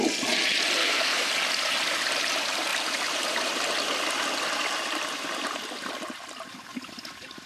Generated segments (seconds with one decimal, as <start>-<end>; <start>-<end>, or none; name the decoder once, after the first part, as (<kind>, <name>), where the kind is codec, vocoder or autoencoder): 0.8-1.3 (codec, SNAC)